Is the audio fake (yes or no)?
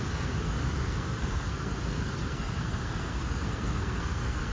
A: yes